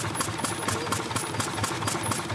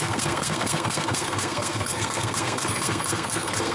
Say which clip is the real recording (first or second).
first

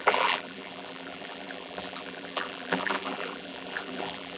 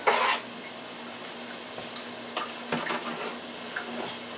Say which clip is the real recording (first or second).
second